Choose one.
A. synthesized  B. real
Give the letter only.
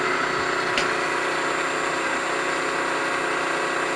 B